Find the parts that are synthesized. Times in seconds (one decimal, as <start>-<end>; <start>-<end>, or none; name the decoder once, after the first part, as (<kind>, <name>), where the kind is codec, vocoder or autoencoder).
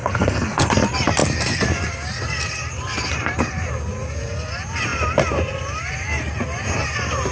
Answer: 0.0-0.7 (codec, SNAC)